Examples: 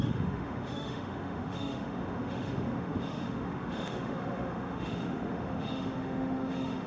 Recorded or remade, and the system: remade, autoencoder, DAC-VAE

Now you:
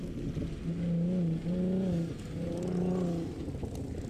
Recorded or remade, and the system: recorded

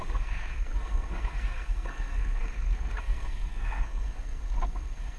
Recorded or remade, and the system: remade, codec, SNAC